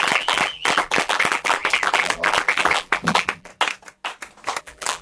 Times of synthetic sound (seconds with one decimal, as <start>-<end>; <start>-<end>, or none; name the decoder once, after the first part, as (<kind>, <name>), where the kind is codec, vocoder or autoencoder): 0.0-3.5 (vocoder, BigVGAN v2); 4.6-5.0